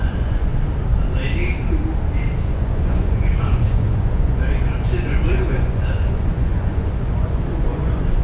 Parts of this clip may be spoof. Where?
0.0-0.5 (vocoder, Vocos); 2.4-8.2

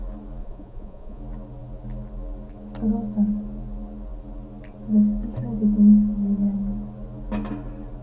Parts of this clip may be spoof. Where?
0.4-1.2 (vocoder, Vocos)

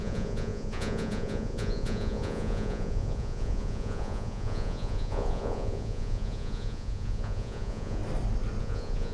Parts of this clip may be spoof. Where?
0.0-8.0 (vocoder, Vocos); 8.6-9.1

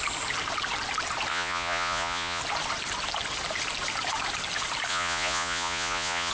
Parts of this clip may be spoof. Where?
1.3-2.4 (vocoder, Vocos); 4.9-6.3

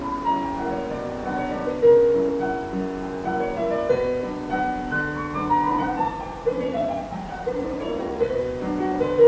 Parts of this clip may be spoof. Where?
5.7-8.4 (vocoder, Vocos)